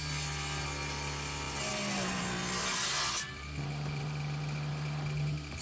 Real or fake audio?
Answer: real